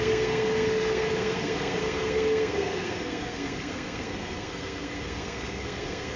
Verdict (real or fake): fake